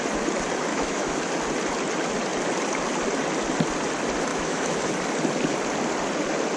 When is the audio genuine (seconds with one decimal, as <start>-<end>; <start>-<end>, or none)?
0.0-0.7; 1.3-4.3; 4.9-6.6

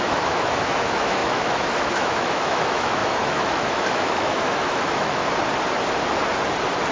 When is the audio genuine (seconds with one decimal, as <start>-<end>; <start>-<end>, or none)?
5.2-6.9

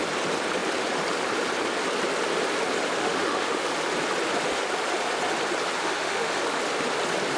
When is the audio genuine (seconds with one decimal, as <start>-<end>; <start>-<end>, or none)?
0.0-3.0; 3.7-5.8; 6.4-7.4